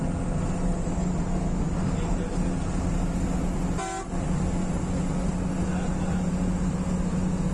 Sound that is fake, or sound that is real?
real